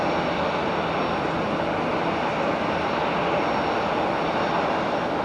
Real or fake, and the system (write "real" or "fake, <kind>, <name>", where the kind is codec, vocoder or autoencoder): real